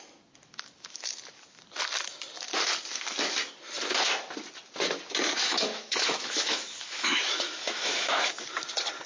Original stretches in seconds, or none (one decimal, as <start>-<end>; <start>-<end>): 0.0-5.4; 8.3-9.1